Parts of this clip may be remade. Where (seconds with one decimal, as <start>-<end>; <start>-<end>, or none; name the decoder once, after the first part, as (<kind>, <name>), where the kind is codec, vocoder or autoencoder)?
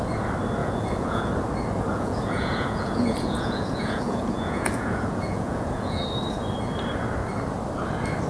0.6-1.3 (vocoder, Vocos); 1.9-6.0